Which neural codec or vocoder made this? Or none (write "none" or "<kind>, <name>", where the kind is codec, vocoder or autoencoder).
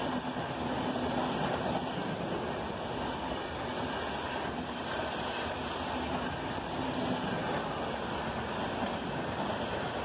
none